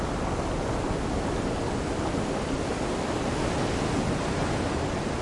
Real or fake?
real